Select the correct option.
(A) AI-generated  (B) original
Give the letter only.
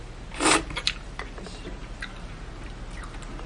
A